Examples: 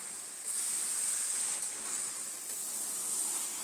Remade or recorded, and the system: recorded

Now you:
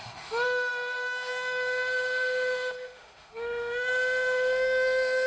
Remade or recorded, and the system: remade, autoencoder, DAC-VAE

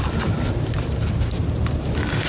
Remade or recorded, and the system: recorded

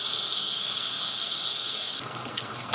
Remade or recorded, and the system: remade, codec, SNAC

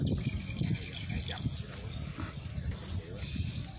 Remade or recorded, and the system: remade, vocoder, BigVGAN v2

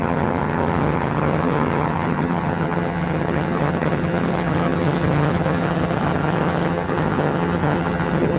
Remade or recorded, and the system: remade, vocoder, HiFi-GAN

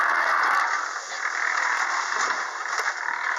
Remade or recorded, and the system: recorded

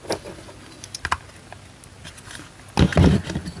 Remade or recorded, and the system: recorded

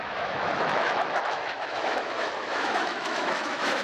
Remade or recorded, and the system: remade, autoencoder, DAC-VAE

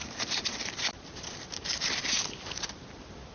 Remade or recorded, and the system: remade, vocoder, BigVGAN v2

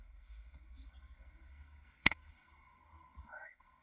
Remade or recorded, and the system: remade, codec, SNAC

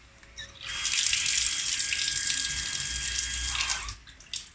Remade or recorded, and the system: recorded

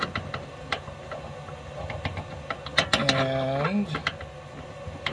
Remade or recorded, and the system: recorded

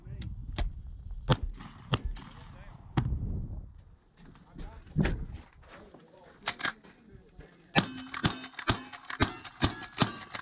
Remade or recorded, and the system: recorded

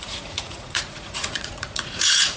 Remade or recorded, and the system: remade, vocoder, Vocos